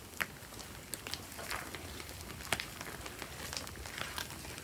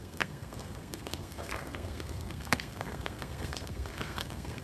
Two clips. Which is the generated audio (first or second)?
second